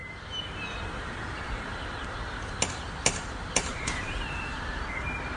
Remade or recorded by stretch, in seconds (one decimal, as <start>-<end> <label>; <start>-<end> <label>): 0.0-1.0 recorded; 1.0-1.7 remade; 1.7-3.5 recorded; 3.5-5.4 remade